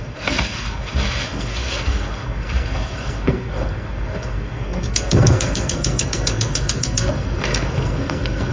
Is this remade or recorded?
remade